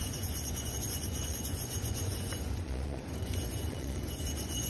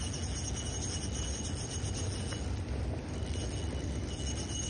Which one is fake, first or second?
first